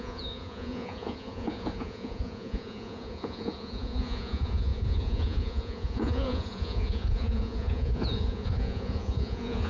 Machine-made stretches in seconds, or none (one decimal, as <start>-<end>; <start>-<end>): 0.0-9.7